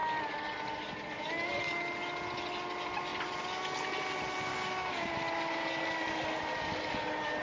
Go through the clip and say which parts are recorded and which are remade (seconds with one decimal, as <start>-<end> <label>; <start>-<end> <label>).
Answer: 0.0-4.5 recorded; 4.5-5.1 remade; 5.1-7.4 recorded